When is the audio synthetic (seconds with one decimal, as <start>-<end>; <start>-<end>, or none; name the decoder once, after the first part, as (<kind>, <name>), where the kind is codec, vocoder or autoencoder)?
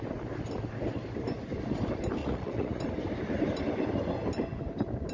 2.2-2.8 (vocoder, Vocos)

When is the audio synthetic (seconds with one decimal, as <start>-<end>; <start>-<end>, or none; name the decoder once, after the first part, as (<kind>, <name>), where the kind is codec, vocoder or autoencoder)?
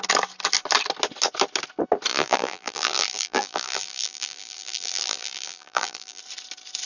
2.1-6.2 (vocoder, BigVGAN v2)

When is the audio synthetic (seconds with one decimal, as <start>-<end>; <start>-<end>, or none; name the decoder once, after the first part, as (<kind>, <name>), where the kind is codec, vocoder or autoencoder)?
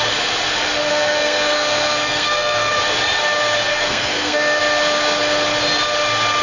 0.9-2.8 (codec, SNAC); 3.7-4.6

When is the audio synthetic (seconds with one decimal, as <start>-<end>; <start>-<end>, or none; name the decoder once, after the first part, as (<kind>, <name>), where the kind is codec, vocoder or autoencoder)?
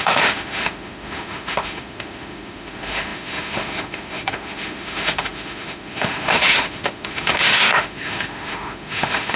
0.0-9.4 (autoencoder, DAC-VAE)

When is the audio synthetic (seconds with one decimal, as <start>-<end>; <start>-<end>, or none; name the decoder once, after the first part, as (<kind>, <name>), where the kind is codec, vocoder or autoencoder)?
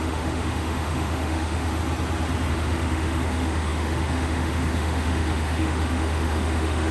0.0-1.8 (autoencoder, DAC-VAE); 2.5-6.9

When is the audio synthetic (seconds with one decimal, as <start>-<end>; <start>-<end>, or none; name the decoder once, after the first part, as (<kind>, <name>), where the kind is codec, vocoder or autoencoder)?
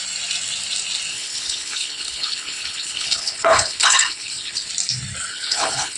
1.1-4.7 (codec, HILCodec); 5.3-6.0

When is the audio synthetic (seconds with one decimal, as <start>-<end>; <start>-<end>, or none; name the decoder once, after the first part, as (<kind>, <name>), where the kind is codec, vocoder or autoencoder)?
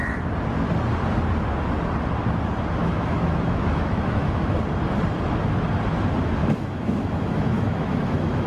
2.8-4.6 (autoencoder, DAC-VAE); 6.4-8.5